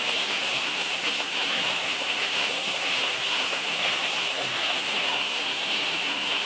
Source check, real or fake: fake